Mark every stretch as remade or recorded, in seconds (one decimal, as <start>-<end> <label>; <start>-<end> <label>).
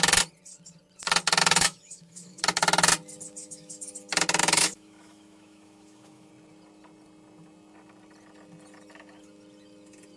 0.0-1.4 recorded; 1.4-2.4 remade; 2.4-3.4 recorded; 3.4-3.9 remade; 3.9-4.4 recorded; 4.4-6.3 remade; 6.3-10.2 recorded